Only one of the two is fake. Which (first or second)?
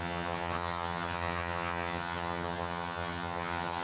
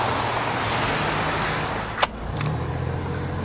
first